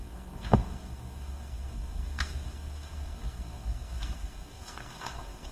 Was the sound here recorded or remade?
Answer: remade